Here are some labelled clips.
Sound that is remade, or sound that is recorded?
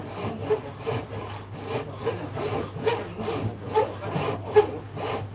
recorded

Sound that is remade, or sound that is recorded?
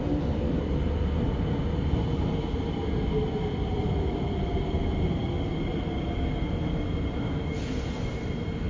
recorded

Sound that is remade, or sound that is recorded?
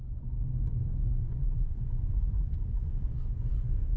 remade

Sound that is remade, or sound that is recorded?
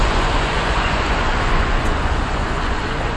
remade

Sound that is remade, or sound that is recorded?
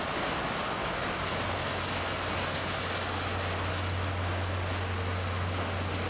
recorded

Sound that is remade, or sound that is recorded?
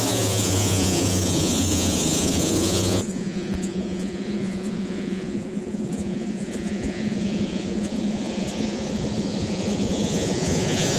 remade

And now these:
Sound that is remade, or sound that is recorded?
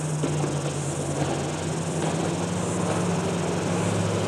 recorded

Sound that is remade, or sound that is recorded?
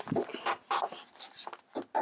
recorded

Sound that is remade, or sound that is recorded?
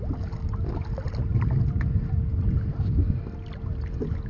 recorded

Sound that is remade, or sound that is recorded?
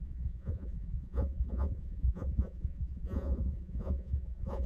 remade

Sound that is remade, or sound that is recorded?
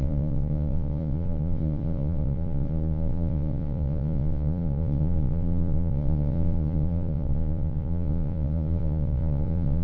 remade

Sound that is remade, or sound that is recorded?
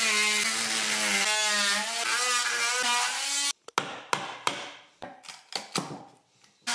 recorded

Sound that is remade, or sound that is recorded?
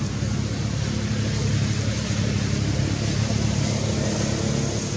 recorded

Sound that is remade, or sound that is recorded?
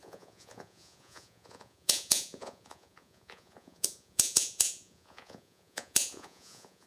remade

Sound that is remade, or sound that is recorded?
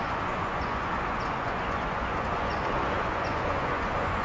remade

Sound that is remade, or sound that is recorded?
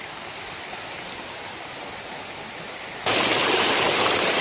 recorded